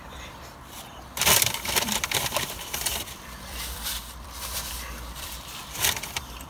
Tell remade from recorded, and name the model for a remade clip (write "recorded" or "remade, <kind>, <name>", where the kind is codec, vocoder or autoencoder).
remade, vocoder, BigVGAN v2